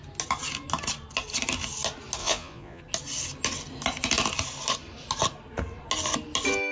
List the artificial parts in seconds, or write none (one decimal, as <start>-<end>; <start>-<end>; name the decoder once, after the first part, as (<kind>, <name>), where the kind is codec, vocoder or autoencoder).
2.2-2.8 (vocoder, Vocos)